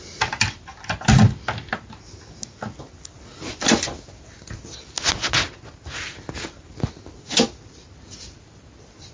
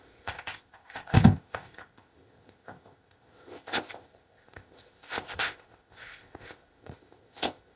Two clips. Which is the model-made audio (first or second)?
second